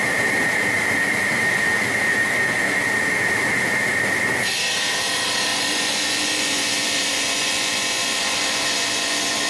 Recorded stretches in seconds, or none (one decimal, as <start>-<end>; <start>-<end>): 0.0-5.5